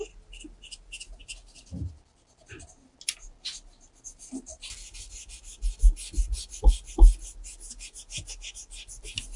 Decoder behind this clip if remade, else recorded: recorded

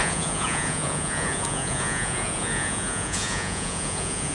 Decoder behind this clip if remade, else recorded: remade, vocoder, Vocos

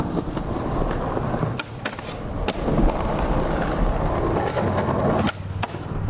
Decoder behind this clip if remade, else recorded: recorded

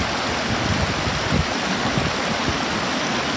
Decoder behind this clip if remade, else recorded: recorded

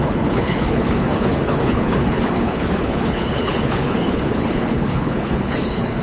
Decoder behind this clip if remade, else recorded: remade, codec, HILCodec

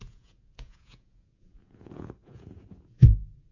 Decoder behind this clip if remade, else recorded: remade, vocoder, Vocos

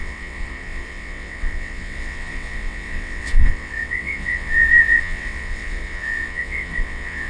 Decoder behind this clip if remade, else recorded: remade, vocoder, WaveNeXt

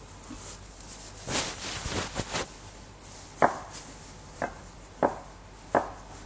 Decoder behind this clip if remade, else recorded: recorded